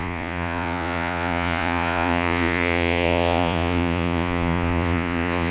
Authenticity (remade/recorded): remade